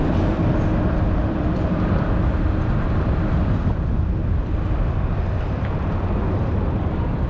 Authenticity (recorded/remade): remade